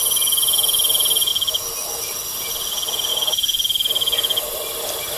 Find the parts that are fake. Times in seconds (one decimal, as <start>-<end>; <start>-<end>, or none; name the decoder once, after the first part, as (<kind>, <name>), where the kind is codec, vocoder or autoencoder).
none